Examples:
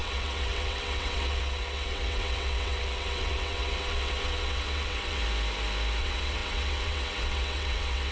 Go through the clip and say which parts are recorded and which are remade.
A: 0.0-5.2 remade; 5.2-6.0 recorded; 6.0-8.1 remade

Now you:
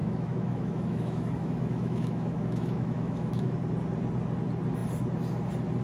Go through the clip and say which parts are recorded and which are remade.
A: 0.0-3.5 remade; 3.5-5.8 recorded

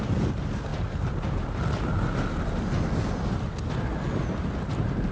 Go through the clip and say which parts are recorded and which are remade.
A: 0.0-5.1 recorded

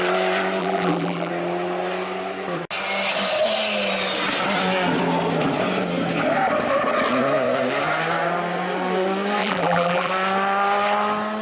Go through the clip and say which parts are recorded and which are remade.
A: 0.0-0.6 recorded; 0.6-1.3 remade; 1.3-9.4 recorded; 9.4-10.1 remade; 10.1-11.4 recorded